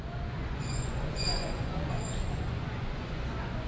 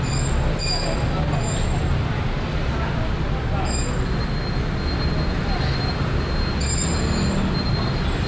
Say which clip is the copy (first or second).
first